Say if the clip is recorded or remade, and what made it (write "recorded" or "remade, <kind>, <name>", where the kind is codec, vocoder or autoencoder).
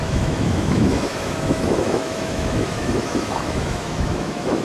remade, autoencoder, DAC-VAE